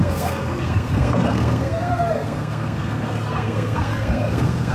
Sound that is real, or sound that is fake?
fake